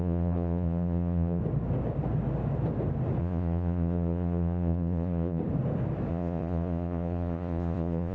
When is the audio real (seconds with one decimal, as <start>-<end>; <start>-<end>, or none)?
1.4-3.2; 5.4-6.1